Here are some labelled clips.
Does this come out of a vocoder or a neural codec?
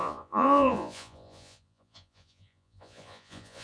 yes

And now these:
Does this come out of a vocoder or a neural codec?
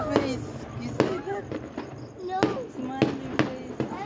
no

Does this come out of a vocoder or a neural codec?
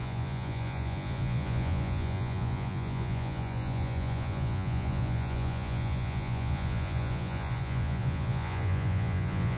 yes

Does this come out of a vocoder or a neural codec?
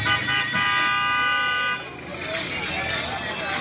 no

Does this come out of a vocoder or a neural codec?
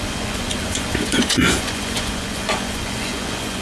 yes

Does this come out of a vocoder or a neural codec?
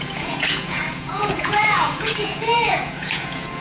yes